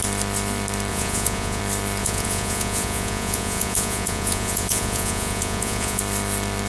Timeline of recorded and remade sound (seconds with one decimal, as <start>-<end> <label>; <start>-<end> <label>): 0.0-0.9 recorded; 0.9-1.6 remade; 1.6-2.0 recorded; 2.0-6.0 remade; 6.0-6.7 recorded